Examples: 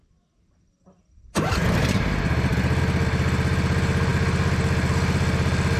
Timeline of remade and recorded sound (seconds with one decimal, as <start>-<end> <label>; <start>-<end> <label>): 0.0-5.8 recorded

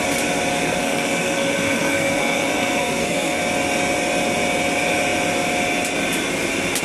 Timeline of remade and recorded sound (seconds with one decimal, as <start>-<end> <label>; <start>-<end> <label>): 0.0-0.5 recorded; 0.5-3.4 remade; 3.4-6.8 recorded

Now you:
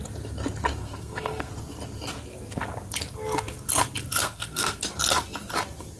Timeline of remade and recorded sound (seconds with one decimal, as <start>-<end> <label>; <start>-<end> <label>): 0.0-0.8 recorded; 0.8-1.5 remade; 1.5-4.2 recorded; 4.2-4.8 remade; 4.8-6.0 recorded

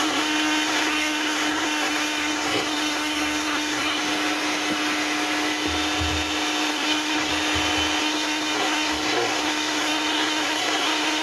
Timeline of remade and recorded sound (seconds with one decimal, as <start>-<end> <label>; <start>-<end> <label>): 0.0-4.0 remade; 4.0-6.7 recorded; 6.7-7.3 remade; 7.3-8.0 recorded; 8.0-11.2 remade